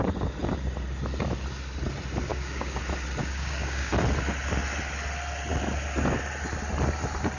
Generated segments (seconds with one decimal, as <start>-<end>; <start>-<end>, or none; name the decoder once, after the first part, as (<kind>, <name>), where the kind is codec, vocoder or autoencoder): 2.3-2.8 (codec, DAC); 3.2-3.9